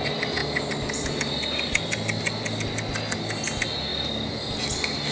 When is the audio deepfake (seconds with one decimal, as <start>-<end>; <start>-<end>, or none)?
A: none